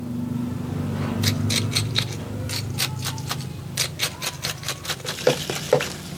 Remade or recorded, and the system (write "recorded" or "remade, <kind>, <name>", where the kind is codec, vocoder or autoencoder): recorded